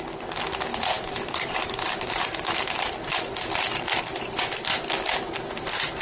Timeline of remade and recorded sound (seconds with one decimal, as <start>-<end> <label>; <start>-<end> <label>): 0.0-0.7 recorded; 0.7-2.4 remade; 2.4-6.0 recorded